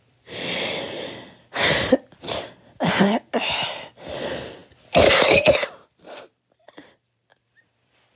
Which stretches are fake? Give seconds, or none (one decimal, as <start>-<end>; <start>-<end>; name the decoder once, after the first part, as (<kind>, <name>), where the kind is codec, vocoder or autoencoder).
0.0-8.2 (vocoder, BigVGAN v2)